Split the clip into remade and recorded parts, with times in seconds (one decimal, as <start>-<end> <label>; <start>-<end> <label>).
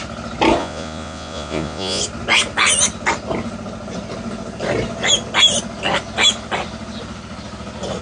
0.0-0.6 recorded; 0.6-2.0 remade; 2.0-8.0 recorded